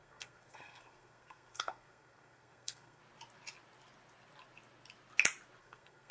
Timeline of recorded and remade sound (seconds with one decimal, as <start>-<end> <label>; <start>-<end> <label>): 0.0-3.0 remade; 3.0-5.6 recorded; 5.6-6.1 remade